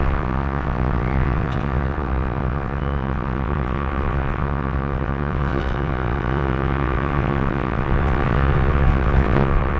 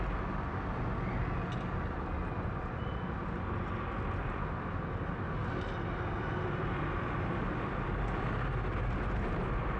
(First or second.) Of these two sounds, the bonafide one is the second